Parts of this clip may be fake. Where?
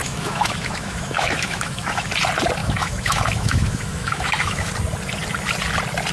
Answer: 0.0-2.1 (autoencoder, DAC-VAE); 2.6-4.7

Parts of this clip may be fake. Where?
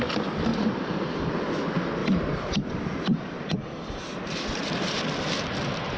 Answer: 0.5-1.3 (vocoder, BigVGAN v2); 2.0-3.5; 4.1-5.0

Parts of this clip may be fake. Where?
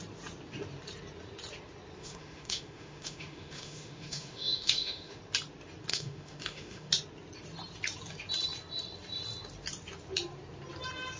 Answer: 2.0-5.2 (autoencoder, DAC-VAE); 5.9-6.9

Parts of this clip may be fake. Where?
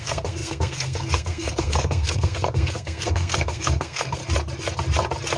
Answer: 0.0-4.2 (codec, SNAC)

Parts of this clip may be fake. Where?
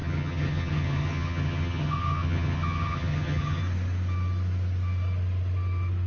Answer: 0.0-3.6 (vocoder, HiFi-GAN)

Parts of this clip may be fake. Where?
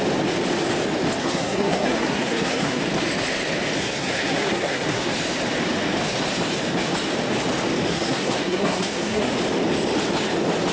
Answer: 1.2-2.8 (codec, SNAC); 3.8-5.1; 7.9-9.3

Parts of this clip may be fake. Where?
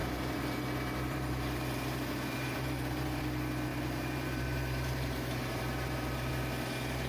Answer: 0.0-3.2 (vocoder, BigVGAN v2); 3.7-6.3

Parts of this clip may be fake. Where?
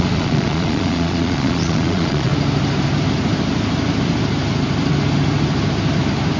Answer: 0.0-2.3 (vocoder, Vocos)